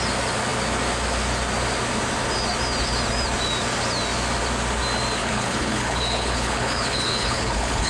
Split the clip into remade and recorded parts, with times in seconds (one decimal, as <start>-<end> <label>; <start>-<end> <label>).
0.0-5.2 recorded; 5.2-7.9 remade